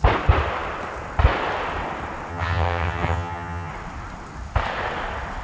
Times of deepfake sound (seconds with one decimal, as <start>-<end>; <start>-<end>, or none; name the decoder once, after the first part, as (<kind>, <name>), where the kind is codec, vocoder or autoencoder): 2.3-3.7 (vocoder, HiFi-GAN)